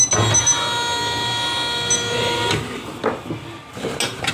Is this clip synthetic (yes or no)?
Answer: no